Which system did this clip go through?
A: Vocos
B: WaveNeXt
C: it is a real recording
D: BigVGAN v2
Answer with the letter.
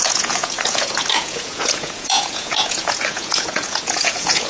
A